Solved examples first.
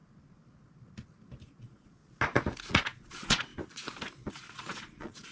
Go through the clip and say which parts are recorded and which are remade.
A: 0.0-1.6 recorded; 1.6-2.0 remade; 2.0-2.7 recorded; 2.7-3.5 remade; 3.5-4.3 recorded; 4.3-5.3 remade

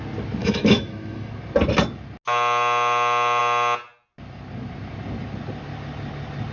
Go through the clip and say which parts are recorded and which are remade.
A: 0.0-0.4 recorded; 0.4-1.3 remade; 1.3-6.5 recorded

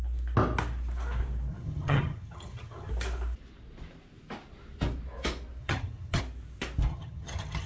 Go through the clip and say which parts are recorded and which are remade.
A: 0.0-1.5 recorded; 1.5-2.9 remade; 2.9-5.6 recorded; 5.6-6.2 remade; 6.2-6.9 recorded; 6.9-7.7 remade

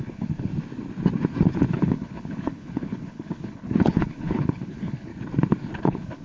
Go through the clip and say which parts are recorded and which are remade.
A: 0.0-0.5 remade; 0.5-1.7 recorded; 1.7-5.1 remade; 5.1-5.8 recorded; 5.8-6.2 remade

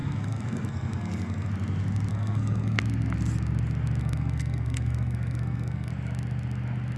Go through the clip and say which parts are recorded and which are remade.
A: 0.0-1.5 remade; 1.5-2.1 recorded; 2.1-2.8 remade; 2.8-4.0 recorded; 4.0-5.9 remade; 5.9-7.0 recorded

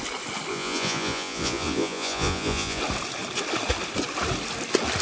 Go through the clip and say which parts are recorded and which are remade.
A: 0.0-0.5 recorded; 0.5-2.8 remade; 2.8-5.0 recorded

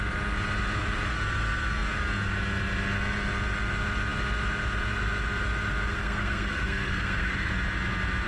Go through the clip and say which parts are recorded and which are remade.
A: 0.0-5.9 recorded; 5.9-7.5 remade; 7.5-8.3 recorded

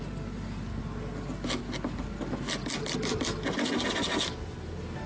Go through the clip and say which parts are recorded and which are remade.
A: 0.0-5.1 recorded